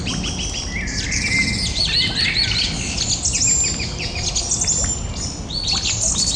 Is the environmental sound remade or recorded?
recorded